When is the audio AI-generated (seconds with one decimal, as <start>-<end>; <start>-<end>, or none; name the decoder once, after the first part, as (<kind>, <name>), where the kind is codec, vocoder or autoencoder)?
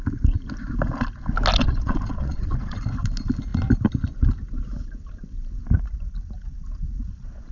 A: 1.6-2.8 (vocoder, Vocos)